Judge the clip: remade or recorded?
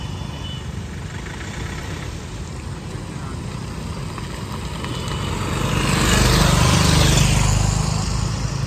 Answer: recorded